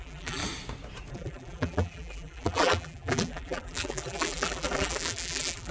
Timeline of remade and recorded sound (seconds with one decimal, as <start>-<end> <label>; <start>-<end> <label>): 0.0-0.4 remade; 0.4-1.1 recorded; 1.1-5.7 remade